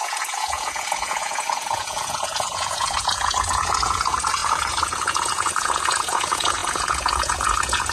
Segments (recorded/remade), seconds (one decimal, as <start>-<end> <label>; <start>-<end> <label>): 0.0-7.9 remade